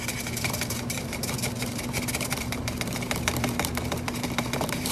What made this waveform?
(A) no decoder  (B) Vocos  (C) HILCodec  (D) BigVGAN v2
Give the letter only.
D